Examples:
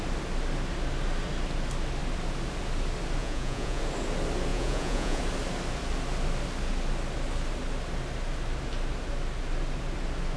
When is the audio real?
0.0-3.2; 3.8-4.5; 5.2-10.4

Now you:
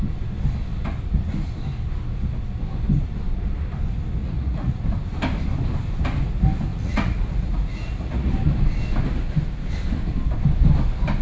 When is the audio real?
0.0-4.2; 4.8-6.7; 8.3-11.2

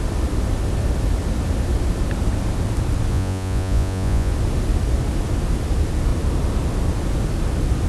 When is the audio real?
0.0-3.1; 4.3-7.9